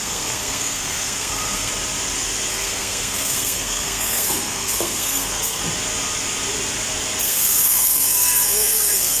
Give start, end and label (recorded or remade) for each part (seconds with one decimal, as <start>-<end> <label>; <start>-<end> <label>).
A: 0.0-1.7 remade; 1.7-2.5 recorded; 2.5-5.6 remade; 5.6-7.2 recorded; 7.2-9.2 remade